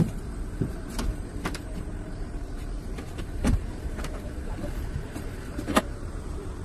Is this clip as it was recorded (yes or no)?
no